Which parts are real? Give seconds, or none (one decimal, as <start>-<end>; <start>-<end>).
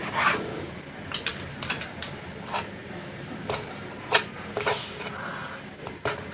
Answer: 0.0-1.3; 2.2-2.8; 4.8-6.3